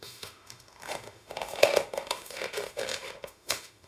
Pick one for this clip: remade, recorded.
remade